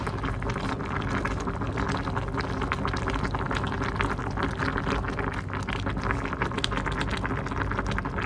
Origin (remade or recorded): recorded